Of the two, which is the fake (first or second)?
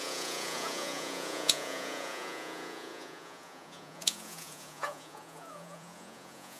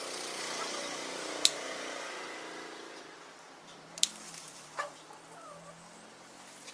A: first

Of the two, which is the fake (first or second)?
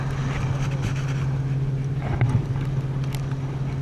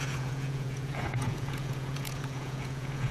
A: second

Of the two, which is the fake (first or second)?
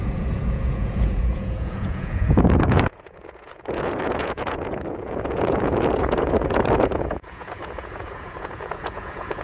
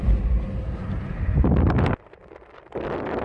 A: first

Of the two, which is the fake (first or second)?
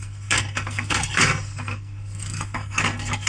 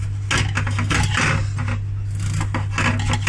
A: first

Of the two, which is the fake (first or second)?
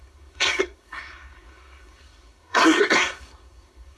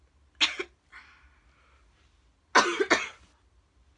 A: first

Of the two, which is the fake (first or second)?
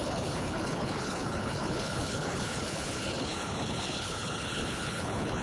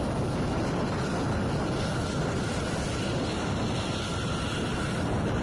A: first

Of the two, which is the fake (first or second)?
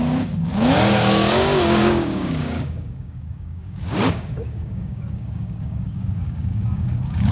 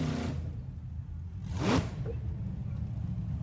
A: first